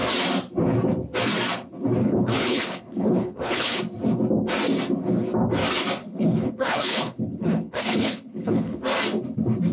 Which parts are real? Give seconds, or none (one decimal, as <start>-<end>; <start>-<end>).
0.0-2.0; 3.8-6.0; 8.8-9.7